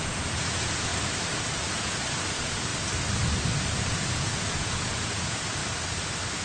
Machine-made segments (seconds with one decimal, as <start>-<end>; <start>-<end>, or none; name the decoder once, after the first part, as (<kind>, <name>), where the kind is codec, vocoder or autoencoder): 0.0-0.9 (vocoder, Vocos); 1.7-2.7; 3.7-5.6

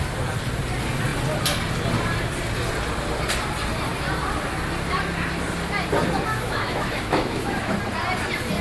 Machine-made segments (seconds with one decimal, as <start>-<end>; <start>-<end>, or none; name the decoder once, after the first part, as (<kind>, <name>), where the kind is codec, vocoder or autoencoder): 6.3-7.8 (autoencoder, DAC-VAE)

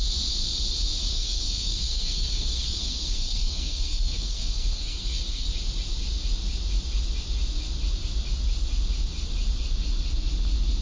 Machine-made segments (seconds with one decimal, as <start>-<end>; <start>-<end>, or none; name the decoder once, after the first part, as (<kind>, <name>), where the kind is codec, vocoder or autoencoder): 1.1-5.5 (codec, SNAC)